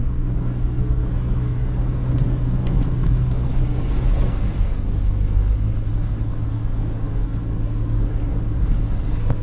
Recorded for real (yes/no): no